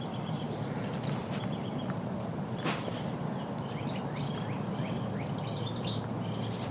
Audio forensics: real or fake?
real